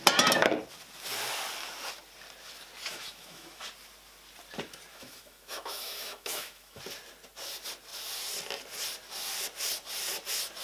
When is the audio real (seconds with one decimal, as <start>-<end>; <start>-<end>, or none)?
0.0-2.9; 3.6-4.9; 6.8-10.6